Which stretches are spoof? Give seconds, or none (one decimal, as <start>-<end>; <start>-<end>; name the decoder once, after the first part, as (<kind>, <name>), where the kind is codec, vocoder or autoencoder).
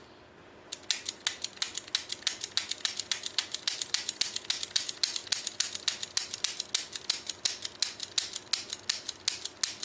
none